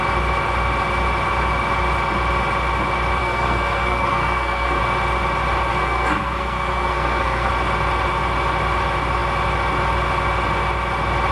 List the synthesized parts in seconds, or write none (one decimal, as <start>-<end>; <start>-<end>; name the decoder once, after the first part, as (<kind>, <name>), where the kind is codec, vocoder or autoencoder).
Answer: 3.2-4.8 (codec, SNAC); 5.7-7.5